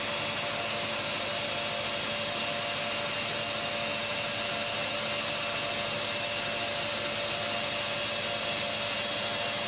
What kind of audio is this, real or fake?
real